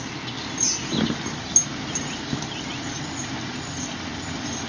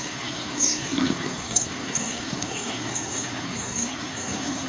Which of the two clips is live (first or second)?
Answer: first